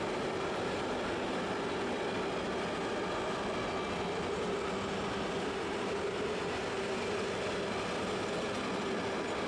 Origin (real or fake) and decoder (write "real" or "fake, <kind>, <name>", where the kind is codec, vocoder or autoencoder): real